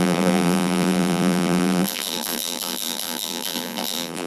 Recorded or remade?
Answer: remade